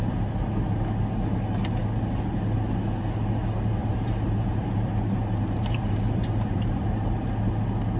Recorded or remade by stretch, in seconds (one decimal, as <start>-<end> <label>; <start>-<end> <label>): 0.0-3.8 recorded; 3.8-6.7 remade; 6.7-8.0 recorded